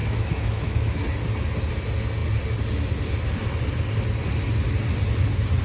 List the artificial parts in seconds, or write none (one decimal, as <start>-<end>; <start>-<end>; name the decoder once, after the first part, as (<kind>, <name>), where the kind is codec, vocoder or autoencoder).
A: 0.0-1.0 (autoencoder, DAC-VAE)